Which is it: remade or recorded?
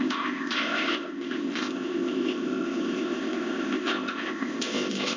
remade